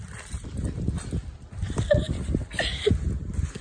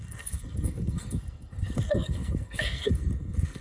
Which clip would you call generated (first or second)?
second